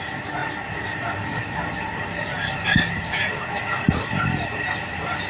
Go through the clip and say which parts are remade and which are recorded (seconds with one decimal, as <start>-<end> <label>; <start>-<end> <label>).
0.0-5.3 recorded

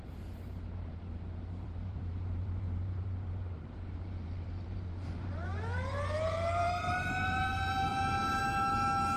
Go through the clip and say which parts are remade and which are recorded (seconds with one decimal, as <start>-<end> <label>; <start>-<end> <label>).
0.0-9.2 remade

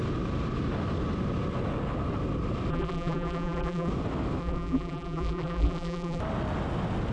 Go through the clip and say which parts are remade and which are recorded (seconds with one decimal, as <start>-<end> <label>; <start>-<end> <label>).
0.0-2.7 recorded; 2.7-3.9 remade; 3.9-4.4 recorded; 4.4-6.2 remade; 6.2-7.1 recorded

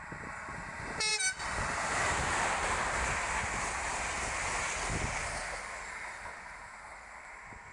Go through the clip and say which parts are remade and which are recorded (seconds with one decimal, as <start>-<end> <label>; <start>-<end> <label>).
0.0-7.7 recorded

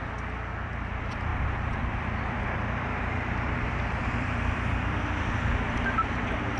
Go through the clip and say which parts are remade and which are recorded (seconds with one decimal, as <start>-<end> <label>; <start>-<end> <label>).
0.0-1.3 recorded; 1.3-5.3 remade; 5.3-6.6 recorded